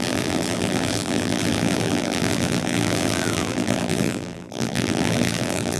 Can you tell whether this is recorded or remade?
remade